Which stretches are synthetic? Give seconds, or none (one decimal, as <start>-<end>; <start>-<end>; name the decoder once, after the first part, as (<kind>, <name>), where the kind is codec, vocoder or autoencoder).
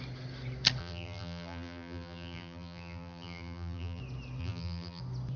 0.8-4.0 (vocoder, BigVGAN v2); 4.4-5.0